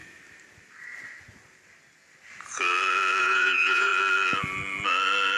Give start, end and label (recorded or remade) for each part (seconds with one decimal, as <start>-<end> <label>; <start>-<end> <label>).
0.0-3.2 recorded; 3.2-3.9 remade; 3.9-5.4 recorded